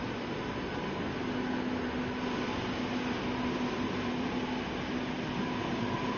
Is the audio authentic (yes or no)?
yes